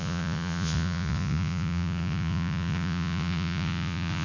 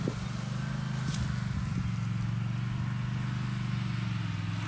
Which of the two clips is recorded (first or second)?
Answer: second